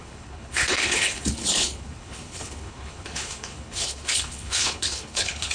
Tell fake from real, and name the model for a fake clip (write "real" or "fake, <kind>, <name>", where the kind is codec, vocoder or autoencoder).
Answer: fake, codec, HILCodec